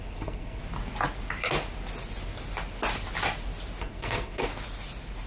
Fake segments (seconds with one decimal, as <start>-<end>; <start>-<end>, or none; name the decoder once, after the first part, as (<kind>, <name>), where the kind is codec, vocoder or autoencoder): 0.0-0.6 (codec, SNAC); 3.8-4.5